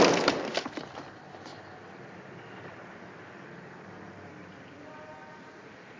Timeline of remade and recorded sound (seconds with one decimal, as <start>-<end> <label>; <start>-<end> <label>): 0.0-6.0 recorded